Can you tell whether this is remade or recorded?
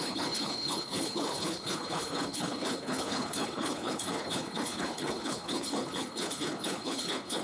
remade